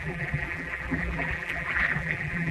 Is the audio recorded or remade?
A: remade